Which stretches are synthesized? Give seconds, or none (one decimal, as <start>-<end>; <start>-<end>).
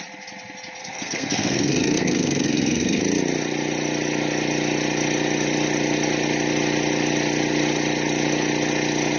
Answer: 0.8-3.0